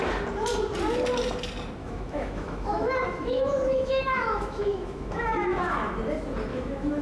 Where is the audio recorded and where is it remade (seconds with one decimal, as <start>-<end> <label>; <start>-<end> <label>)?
0.0-1.8 recorded; 1.8-6.0 remade; 6.0-6.5 recorded; 6.5-7.0 remade